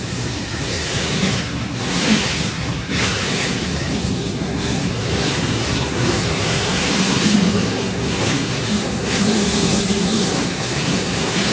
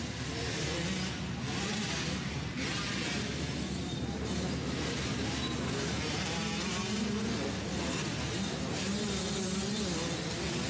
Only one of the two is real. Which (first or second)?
second